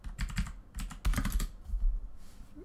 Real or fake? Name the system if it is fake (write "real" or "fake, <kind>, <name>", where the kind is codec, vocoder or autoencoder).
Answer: real